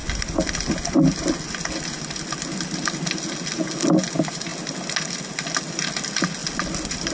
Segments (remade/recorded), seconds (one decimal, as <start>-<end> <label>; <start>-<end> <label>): 0.0-7.1 recorded